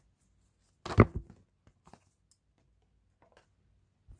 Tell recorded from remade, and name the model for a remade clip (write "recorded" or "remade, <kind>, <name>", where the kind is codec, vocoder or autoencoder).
recorded